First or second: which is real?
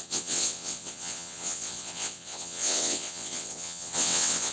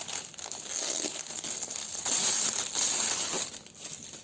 second